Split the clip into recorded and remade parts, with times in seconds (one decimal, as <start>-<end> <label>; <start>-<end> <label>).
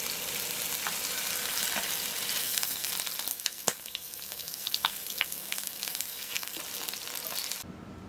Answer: 0.0-2.4 recorded; 2.4-2.9 remade; 2.9-3.3 recorded; 3.3-6.6 remade; 6.6-8.1 recorded